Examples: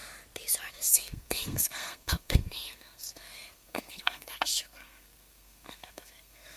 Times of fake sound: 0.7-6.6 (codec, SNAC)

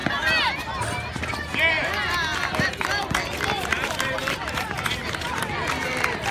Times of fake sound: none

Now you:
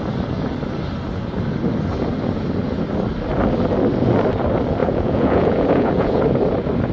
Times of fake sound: 4.8-6.2 (vocoder, Vocos)

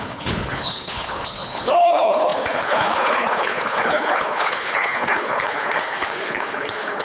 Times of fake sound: 0.0-7.0 (codec, HILCodec)

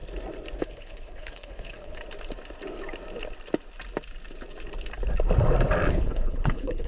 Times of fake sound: 0.6-2.0 (codec, HILCodec); 5.9-6.9

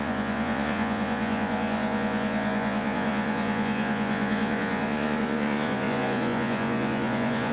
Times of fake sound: 0.0-7.5 (vocoder, Vocos)

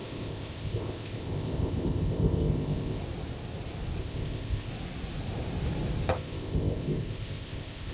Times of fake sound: 0.0-3.0 (codec, ZipCodec); 4.0-4.7; 6.1-7.9

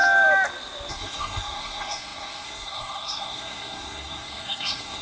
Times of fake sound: 0.9-5.0 (codec, SNAC)